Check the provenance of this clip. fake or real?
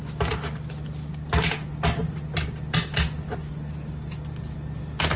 real